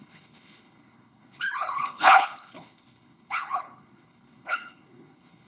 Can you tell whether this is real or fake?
fake